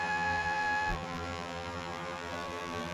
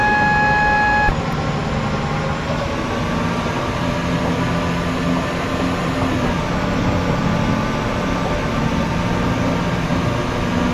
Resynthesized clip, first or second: first